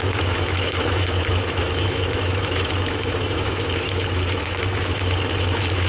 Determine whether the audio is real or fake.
fake